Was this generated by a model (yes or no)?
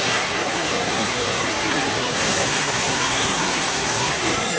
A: yes